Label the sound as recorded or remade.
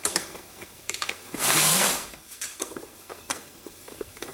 remade